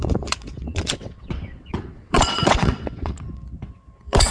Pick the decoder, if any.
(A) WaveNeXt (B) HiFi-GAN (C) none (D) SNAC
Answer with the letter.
A